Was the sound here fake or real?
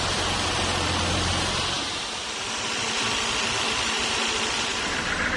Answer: real